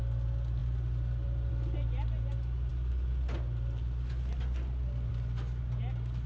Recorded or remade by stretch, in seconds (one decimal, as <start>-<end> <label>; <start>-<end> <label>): 0.0-6.3 recorded

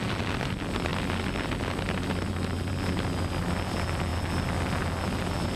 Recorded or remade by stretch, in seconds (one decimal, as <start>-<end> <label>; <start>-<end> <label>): 0.0-5.6 recorded

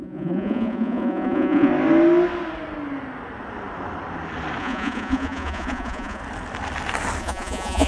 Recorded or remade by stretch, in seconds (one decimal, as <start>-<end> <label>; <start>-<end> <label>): 0.0-1.7 remade; 1.7-4.6 recorded; 4.6-6.2 remade; 6.2-7.2 recorded; 7.2-7.9 remade

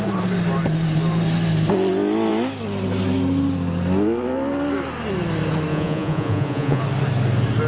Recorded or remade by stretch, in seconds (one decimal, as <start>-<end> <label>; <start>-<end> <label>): 0.0-5.7 recorded; 5.7-6.8 remade; 6.8-7.7 recorded

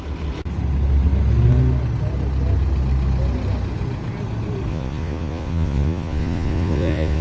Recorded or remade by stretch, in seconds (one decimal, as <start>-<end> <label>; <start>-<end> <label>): 0.0-4.7 recorded; 4.7-7.2 remade

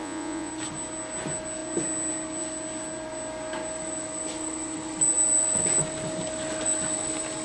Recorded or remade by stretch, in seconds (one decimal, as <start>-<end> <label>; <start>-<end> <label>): 0.0-0.5 remade; 0.5-7.4 recorded

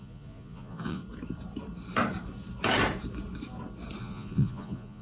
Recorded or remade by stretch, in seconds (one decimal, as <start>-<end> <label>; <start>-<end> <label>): 0.0-1.0 remade; 1.0-4.0 recorded; 4.0-5.0 remade